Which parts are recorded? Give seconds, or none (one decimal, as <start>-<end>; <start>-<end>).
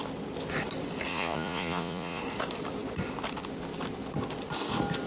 0.0-1.1; 2.2-5.1